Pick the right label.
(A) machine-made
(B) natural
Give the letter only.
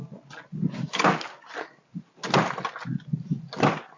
B